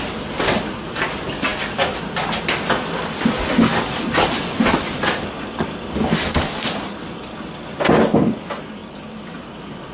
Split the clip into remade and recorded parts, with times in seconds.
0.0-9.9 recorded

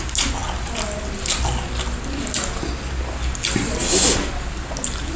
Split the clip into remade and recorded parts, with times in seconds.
0.0-5.2 recorded

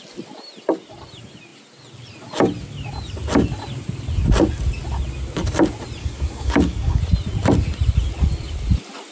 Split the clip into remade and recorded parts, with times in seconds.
0.0-6.0 recorded; 6.0-7.0 remade; 7.0-9.1 recorded

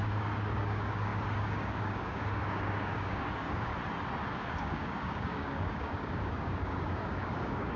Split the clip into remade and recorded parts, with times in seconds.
0.0-3.7 remade; 3.7-4.3 recorded; 4.3-7.8 remade

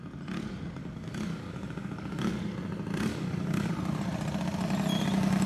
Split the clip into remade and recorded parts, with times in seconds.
0.0-0.8 recorded; 0.8-2.3 remade; 2.3-3.1 recorded; 3.1-3.7 remade; 3.7-5.5 recorded

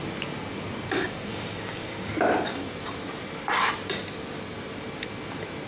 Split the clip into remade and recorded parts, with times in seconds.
0.0-1.3 recorded; 1.3-2.1 remade; 2.1-5.7 recorded